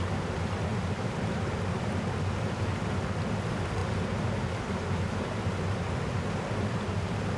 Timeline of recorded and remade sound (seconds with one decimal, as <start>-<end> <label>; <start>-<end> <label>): 0.0-7.4 recorded